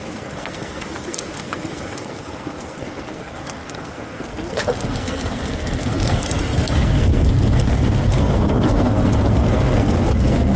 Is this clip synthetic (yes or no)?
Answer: yes